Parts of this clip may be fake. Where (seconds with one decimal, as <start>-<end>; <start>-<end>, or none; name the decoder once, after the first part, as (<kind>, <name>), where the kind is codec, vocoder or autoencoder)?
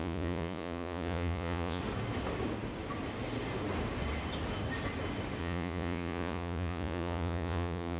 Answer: 0.0-1.8 (vocoder, Vocos); 5.4-8.0